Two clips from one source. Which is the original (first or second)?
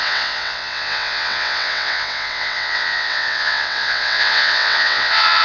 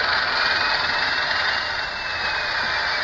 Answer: second